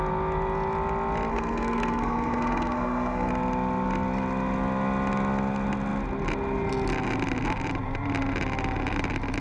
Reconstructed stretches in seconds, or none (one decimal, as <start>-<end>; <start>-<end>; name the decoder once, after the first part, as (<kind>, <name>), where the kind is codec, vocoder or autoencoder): 1.3-3.3 (codec, SNAC)

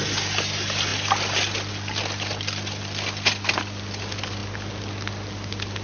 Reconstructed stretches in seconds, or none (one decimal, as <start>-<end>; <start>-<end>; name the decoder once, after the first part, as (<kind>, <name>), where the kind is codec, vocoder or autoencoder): none

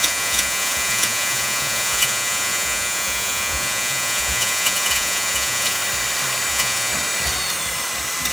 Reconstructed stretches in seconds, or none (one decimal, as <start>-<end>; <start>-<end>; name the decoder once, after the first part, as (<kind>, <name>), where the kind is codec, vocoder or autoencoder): 0.0-5.8 (vocoder, Vocos); 6.5-6.9